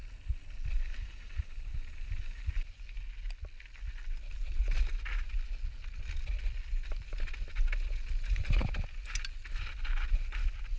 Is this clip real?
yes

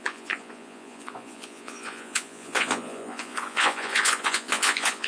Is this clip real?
no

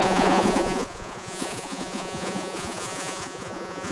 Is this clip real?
no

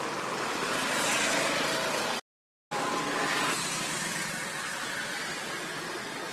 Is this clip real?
yes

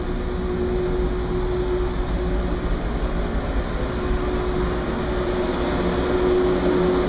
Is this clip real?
yes